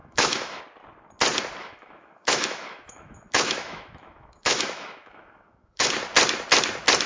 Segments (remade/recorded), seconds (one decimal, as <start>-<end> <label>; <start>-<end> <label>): 0.0-0.6 remade; 0.6-1.6 recorded; 1.6-5.9 remade; 5.9-7.1 recorded